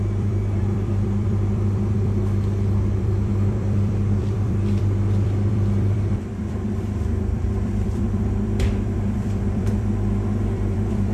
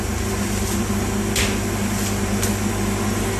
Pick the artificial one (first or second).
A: first